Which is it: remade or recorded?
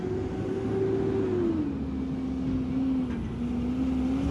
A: recorded